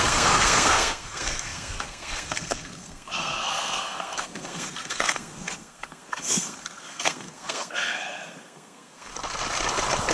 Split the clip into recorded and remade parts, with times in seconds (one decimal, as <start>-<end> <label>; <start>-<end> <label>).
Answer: 0.0-9.1 remade; 9.1-10.1 recorded